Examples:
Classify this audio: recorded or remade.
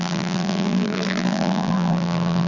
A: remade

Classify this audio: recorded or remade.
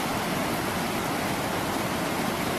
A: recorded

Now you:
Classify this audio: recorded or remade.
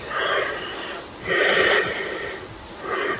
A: recorded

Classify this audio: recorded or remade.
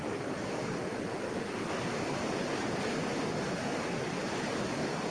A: recorded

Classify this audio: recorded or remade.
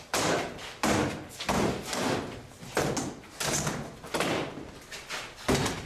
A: recorded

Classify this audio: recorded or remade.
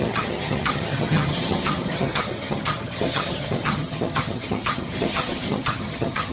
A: remade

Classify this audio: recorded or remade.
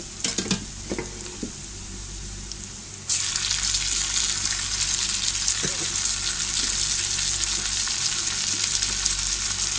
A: recorded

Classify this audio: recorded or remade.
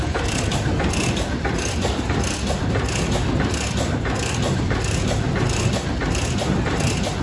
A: remade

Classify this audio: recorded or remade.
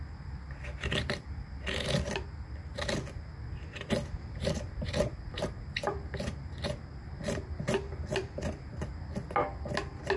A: recorded